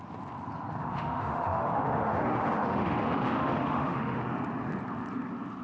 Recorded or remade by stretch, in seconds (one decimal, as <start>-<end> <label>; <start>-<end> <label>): 0.0-0.8 recorded; 0.8-4.2 remade; 4.2-5.6 recorded